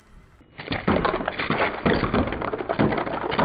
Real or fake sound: real